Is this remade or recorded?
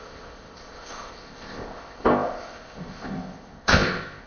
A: remade